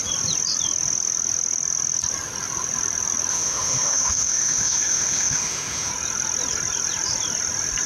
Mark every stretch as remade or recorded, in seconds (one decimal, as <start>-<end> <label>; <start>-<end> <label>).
0.0-3.3 recorded; 3.3-5.9 remade; 5.9-7.9 recorded